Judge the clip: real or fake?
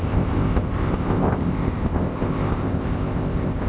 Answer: fake